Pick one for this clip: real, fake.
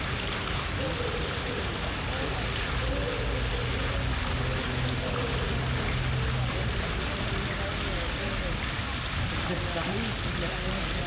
real